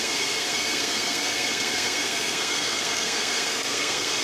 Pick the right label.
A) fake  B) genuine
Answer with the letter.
A